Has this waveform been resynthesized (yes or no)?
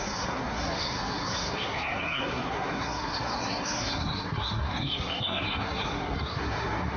yes